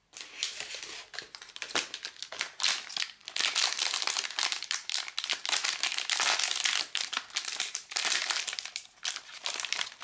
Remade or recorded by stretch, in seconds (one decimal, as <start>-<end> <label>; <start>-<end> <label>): 0.0-10.0 remade